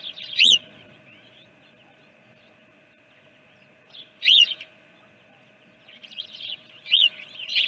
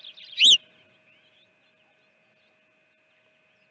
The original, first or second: second